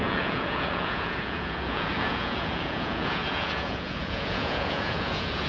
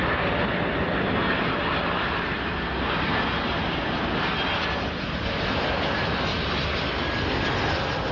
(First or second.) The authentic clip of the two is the second